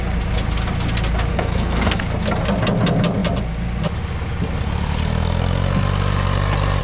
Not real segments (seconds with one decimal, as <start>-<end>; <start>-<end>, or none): 1.3-2.0